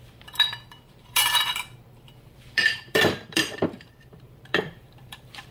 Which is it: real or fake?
fake